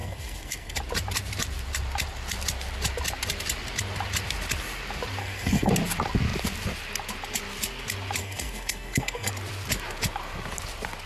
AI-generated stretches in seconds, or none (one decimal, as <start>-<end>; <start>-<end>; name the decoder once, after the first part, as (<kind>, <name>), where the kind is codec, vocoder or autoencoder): 0.0-0.8 (codec, SNAC); 5.2-5.7; 8.2-9.3